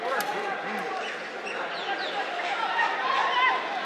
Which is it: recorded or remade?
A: recorded